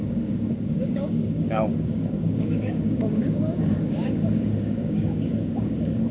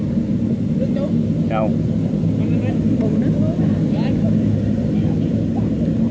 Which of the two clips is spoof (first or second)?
first